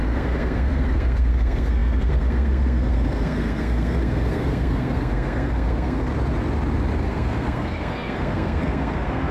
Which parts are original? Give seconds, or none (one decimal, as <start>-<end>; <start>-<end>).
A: 6.1-7.0